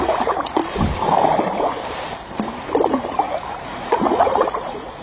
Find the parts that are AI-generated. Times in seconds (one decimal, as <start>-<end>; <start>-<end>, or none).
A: 0.0-0.6; 3.5-5.0

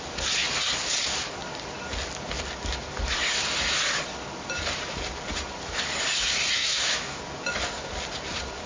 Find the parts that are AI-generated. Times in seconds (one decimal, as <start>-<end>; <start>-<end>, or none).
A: 6.6-7.2

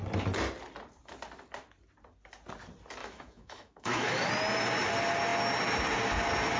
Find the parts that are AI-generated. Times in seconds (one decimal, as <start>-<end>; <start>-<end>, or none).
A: 3.0-4.3